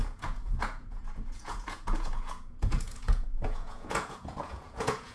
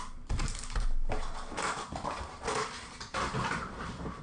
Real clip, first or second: second